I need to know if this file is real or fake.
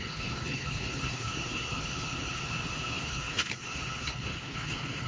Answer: fake